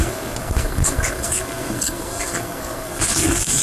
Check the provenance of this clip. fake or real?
fake